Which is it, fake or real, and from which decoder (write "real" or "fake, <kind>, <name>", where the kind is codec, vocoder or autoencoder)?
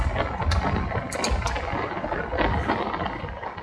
real